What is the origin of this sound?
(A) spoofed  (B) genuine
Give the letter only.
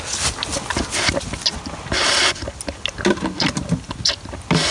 B